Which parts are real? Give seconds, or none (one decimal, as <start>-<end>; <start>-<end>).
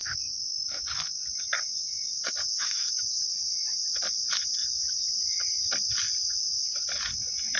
0.9-2.5; 3.1-7.6